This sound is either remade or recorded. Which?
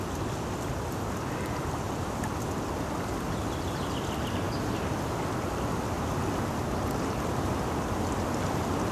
recorded